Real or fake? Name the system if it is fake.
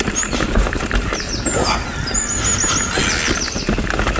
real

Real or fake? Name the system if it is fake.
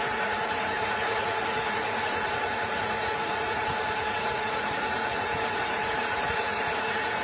fake, vocoder, Vocos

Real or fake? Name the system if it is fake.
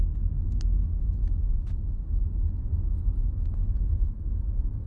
real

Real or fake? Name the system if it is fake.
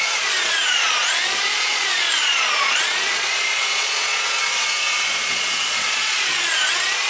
fake, vocoder, Vocos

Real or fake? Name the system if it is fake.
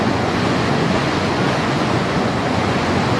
fake, vocoder, Vocos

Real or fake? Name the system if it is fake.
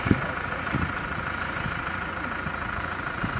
fake, vocoder, Vocos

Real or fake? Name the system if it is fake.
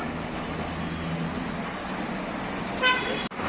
real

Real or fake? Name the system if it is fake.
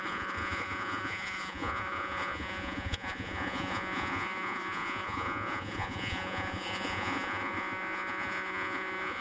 fake, vocoder, Vocos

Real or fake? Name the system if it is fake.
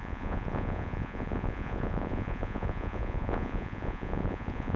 fake, vocoder, Vocos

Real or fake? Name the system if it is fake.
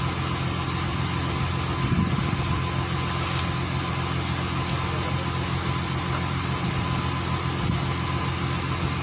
real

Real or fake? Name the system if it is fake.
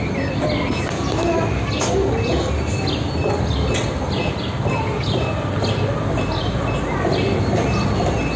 real